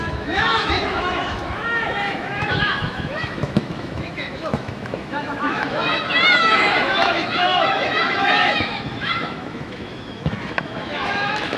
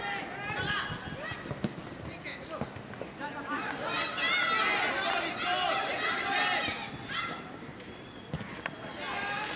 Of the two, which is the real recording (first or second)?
second